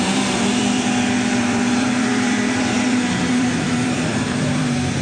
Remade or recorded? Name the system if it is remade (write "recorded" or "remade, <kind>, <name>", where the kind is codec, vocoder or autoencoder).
remade, vocoder, BigVGAN v2